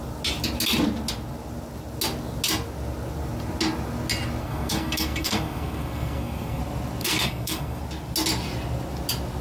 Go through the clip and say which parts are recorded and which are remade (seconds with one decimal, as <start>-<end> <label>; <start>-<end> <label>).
0.0-4.4 recorded; 4.4-6.6 remade; 6.6-7.0 recorded; 7.0-7.8 remade; 7.8-9.4 recorded